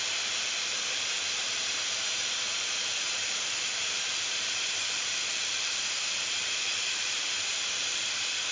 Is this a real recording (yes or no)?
no